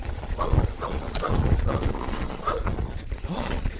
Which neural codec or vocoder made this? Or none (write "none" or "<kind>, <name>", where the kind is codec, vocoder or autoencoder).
vocoder, Vocos